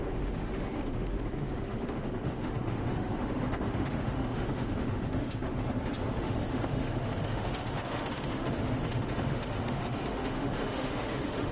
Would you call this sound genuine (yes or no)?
no